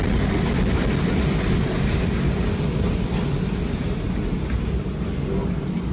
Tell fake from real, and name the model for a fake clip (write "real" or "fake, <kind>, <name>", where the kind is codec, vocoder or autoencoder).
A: real